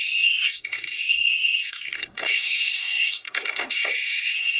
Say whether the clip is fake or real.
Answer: fake